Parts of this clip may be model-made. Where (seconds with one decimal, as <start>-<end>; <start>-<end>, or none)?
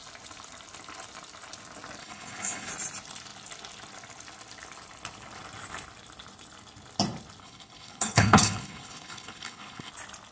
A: 2.0-2.7; 7.4-9.9